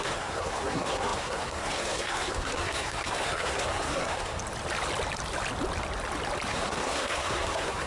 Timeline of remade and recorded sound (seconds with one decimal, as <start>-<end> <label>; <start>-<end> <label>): 0.0-4.4 remade; 4.4-6.5 recorded; 6.5-7.9 remade

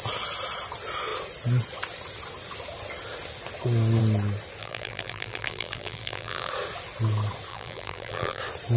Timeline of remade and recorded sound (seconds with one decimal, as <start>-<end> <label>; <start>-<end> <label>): 0.0-4.6 recorded; 4.6-6.5 remade; 6.5-7.5 recorded; 7.5-8.4 remade; 8.4-8.8 recorded

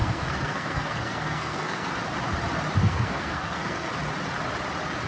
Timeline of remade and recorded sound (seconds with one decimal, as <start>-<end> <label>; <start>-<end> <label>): 0.0-1.9 remade; 1.9-2.8 recorded; 2.8-3.9 remade; 3.9-5.1 recorded

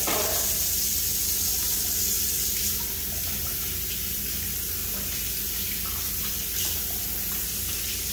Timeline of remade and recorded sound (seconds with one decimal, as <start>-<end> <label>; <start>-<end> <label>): 0.0-8.1 recorded

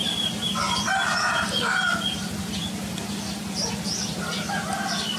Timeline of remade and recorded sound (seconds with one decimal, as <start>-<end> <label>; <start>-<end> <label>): 0.0-5.2 recorded

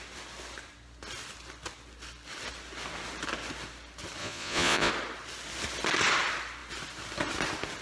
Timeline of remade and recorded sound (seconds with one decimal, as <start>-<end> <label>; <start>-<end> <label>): 0.0-4.2 recorded; 4.2-4.9 remade; 4.9-7.8 recorded